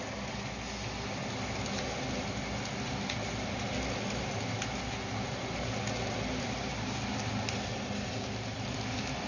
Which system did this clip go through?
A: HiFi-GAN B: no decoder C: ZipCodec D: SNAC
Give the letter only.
B